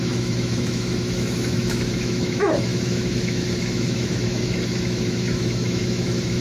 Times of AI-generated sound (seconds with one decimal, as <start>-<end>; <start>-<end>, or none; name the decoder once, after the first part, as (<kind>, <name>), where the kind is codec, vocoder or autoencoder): 0.0-6.4 (autoencoder, DAC-VAE)